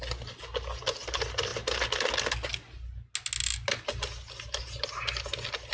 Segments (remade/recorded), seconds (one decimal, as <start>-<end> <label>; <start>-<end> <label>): 0.0-5.7 recorded